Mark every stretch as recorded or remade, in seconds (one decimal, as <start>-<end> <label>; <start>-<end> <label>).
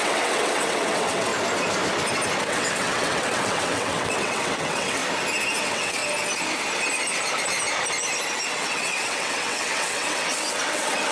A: 0.0-1.3 remade; 1.3-2.4 recorded; 2.4-5.0 remade; 5.0-5.6 recorded; 5.6-6.0 remade; 6.0-8.5 recorded; 8.5-11.1 remade